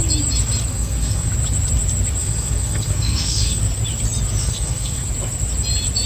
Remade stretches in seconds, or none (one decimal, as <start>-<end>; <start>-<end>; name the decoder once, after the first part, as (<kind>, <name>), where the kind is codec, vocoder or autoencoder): 0.7-1.3 (codec, SNAC); 2.2-3.6; 4.4-5.1

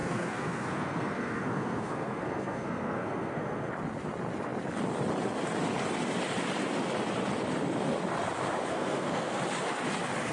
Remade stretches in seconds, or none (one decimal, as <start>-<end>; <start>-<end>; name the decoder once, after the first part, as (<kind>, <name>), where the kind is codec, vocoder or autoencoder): 0.0-3.7 (codec, SNAC); 8.7-9.4

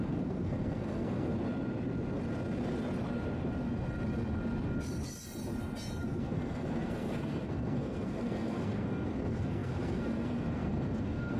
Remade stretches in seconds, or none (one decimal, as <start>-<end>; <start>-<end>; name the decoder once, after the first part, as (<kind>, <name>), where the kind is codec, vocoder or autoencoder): 0.0-1.3 (codec, SNAC); 6.0-11.4

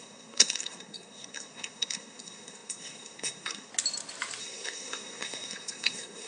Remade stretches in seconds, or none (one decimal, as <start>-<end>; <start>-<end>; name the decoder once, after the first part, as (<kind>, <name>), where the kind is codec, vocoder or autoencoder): 0.0-3.7 (codec, SNAC); 4.4-6.3

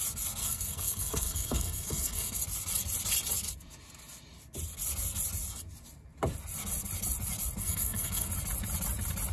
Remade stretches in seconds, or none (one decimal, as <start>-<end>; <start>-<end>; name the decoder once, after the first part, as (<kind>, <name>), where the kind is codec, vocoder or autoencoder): 0.4-2.4 (codec, SNAC); 7.6-8.3